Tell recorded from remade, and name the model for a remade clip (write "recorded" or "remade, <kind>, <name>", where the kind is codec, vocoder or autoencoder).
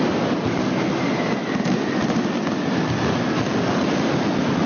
recorded